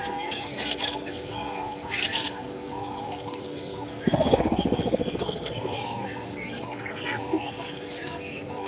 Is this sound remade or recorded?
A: remade